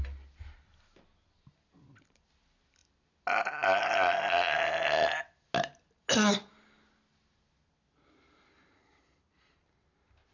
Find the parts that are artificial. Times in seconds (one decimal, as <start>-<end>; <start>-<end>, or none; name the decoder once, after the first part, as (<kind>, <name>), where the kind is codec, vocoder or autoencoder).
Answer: none